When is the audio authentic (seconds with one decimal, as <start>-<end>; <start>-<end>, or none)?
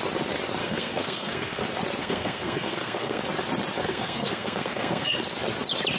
0.0-0.6; 1.6-2.0; 3.2-3.8; 5.2-6.0